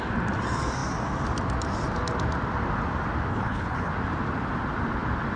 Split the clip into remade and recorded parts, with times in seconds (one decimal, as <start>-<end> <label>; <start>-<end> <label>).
0.0-3.3 recorded; 3.3-3.9 remade; 3.9-5.4 recorded